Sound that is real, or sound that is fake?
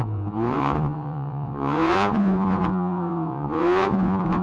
fake